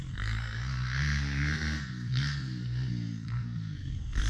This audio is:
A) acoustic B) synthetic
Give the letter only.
B